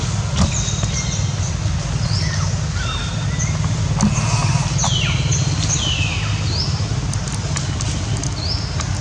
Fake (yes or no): no